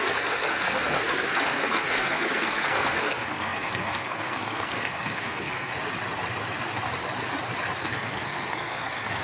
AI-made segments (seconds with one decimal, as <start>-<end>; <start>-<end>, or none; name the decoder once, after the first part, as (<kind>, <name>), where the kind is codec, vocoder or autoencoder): 0.0-5.7 (codec, SNAC); 7.8-9.2